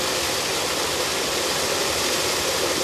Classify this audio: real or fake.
real